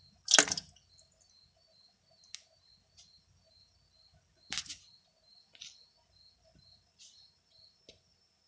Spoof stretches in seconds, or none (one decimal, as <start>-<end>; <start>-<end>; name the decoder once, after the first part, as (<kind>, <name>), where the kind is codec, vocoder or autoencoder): none